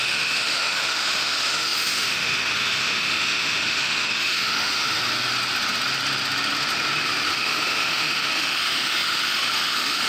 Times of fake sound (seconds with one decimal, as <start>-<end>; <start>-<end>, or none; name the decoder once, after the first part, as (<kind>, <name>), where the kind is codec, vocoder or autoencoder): 0.0-5.0 (autoencoder, DAC-VAE); 7.3-10.1